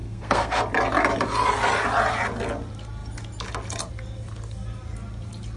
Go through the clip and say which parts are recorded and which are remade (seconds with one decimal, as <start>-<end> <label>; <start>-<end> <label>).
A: 0.0-0.6 remade; 0.6-5.6 recorded